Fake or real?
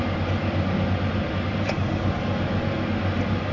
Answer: real